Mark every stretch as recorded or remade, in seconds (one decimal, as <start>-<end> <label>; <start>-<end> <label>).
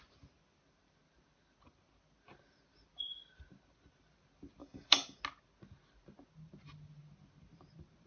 0.0-4.6 recorded; 4.6-5.2 remade; 5.2-8.1 recorded